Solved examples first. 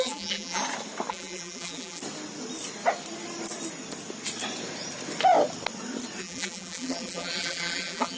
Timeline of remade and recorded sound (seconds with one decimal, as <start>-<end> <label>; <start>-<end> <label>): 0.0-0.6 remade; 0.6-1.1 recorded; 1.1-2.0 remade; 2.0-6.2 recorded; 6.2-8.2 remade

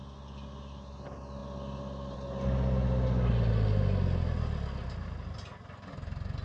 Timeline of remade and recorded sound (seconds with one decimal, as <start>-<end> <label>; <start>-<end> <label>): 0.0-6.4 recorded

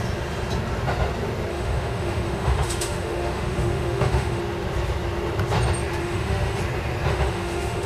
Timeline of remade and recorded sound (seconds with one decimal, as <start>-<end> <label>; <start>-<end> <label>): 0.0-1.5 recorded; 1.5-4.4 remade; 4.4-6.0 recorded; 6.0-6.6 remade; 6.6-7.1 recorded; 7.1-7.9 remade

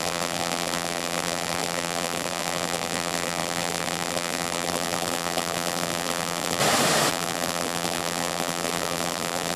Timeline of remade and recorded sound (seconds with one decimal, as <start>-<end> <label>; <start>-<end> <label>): 0.0-6.6 remade; 6.6-7.1 recorded; 7.1-9.6 remade